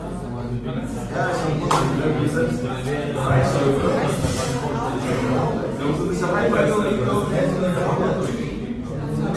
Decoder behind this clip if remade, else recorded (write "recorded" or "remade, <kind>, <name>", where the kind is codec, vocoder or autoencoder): recorded